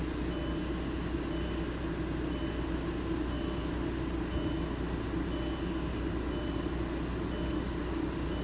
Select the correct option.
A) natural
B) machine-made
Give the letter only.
A